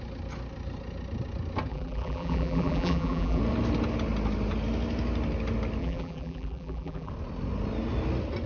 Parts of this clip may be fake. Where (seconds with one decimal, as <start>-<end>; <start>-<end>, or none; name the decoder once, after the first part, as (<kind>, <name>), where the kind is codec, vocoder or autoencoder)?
1.7-3.4 (vocoder, BigVGAN v2); 5.8-7.1